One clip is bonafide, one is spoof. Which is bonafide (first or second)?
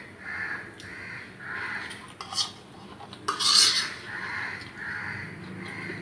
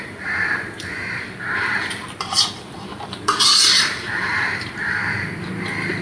first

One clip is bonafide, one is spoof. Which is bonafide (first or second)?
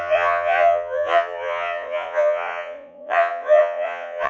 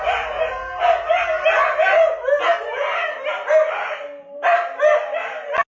second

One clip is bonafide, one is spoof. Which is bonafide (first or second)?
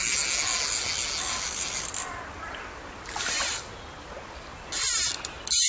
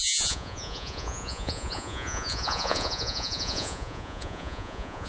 first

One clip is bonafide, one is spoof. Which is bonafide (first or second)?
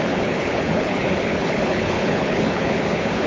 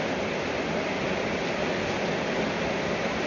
second